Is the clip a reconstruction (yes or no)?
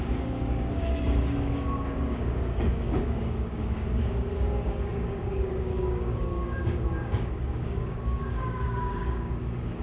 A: yes